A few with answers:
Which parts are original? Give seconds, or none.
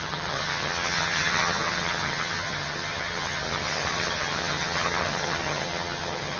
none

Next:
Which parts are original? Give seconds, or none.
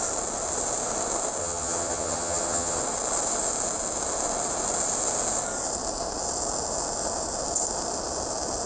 0.0-1.4; 2.8-8.7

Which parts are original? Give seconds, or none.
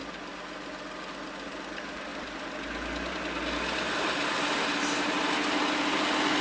0.0-6.4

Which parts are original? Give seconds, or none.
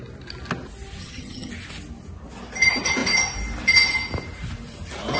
0.0-1.0; 1.5-5.2